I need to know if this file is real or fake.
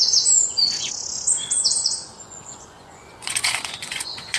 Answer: fake